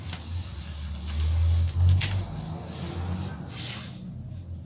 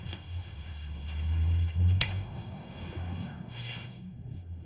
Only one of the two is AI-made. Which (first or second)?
second